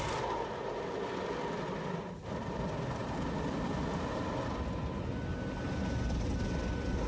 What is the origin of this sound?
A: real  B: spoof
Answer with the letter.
A